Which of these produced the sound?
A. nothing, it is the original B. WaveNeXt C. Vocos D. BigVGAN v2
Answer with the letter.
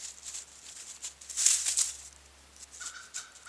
A